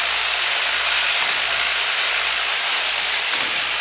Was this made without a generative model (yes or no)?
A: yes